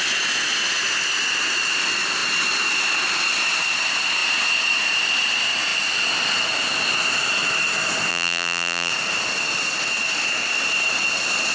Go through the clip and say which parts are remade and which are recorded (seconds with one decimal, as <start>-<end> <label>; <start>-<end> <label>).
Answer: 0.0-8.1 recorded; 8.1-8.9 remade; 8.9-11.5 recorded